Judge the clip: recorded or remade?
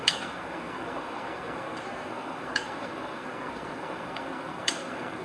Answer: remade